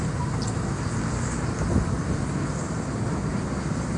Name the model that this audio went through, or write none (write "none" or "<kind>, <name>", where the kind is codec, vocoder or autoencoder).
none